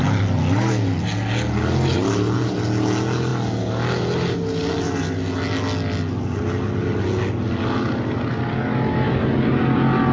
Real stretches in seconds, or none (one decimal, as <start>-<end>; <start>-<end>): 0.0-10.1